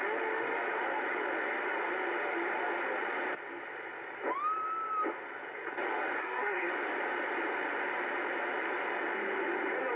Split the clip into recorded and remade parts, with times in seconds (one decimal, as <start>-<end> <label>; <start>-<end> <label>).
0.0-6.2 recorded; 6.2-6.7 remade; 6.7-10.0 recorded